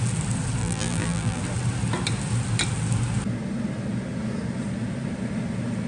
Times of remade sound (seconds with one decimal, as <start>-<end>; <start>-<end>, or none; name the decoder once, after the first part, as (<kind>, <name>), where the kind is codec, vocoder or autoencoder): 0.6-1.4 (vocoder, BigVGAN v2)